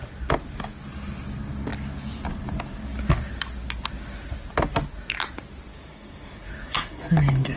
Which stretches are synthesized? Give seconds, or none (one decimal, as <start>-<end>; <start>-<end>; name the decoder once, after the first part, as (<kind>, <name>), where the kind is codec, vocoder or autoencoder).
5.7-7.6 (codec, DAC)